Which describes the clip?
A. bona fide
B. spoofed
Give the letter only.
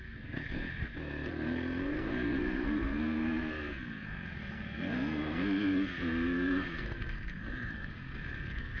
B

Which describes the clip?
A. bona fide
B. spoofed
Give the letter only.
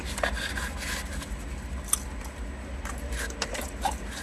A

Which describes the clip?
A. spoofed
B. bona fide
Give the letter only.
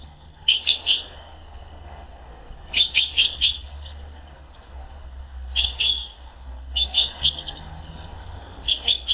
A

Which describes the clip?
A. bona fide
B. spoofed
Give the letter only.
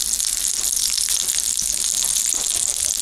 A